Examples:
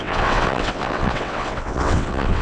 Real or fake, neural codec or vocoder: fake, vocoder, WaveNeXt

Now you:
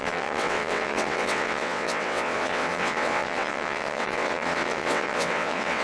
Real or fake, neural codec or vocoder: fake, vocoder, WaveNeXt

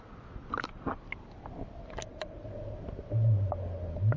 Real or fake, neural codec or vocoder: real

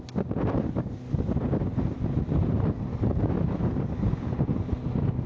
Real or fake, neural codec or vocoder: real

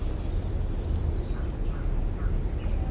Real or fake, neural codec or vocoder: real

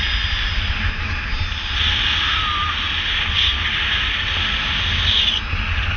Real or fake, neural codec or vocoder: real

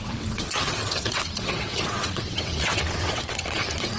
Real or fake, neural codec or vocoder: fake, vocoder, WaveNeXt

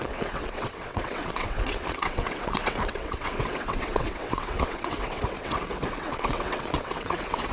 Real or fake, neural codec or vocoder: fake, vocoder, WaveNeXt